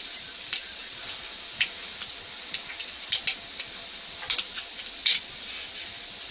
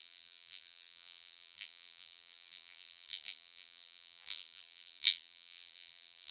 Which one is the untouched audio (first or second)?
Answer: first